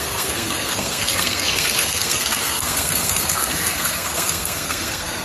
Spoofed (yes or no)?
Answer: yes